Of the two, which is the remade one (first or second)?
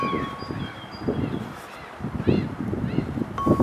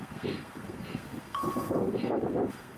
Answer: second